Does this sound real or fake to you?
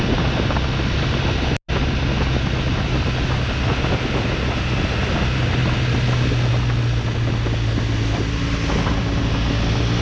real